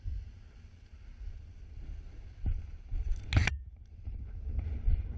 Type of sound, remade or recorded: recorded